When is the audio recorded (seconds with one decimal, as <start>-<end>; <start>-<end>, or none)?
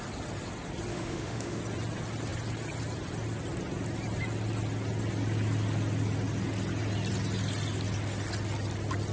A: 0.0-0.9; 1.6-9.1